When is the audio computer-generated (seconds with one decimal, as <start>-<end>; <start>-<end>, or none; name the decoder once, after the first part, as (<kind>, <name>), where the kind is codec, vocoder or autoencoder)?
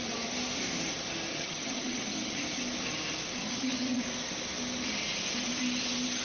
1.3-2.4 (vocoder, HiFi-GAN); 3.4-4.0